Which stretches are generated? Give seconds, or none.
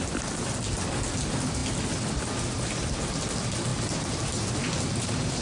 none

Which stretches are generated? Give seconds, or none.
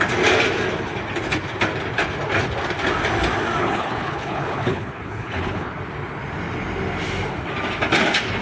3.6-5.8 (codec, HILCodec)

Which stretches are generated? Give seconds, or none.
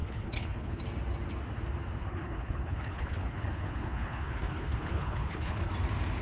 0.0-0.8 (codec, HILCodec); 2.0-5.7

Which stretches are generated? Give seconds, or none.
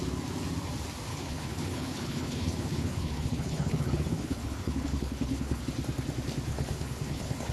1.1-5.6 (codec, HILCodec); 6.5-7.5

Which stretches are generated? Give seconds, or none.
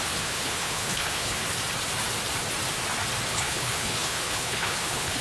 0.0-1.4 (codec, HILCodec); 3.3-5.2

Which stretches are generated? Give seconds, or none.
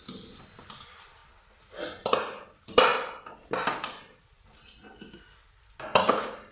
none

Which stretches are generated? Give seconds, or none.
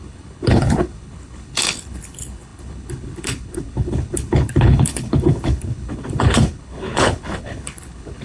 0.0-8.2 (codec, HILCodec)